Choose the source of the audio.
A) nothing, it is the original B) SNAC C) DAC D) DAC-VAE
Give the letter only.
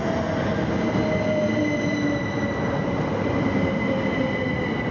A